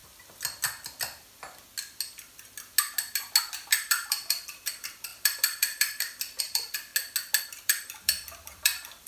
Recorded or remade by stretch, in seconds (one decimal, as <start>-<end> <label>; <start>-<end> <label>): 0.0-3.4 recorded; 3.4-6.9 remade; 6.9-7.4 recorded; 7.4-9.1 remade